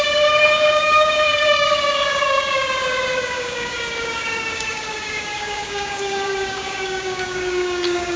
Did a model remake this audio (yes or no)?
yes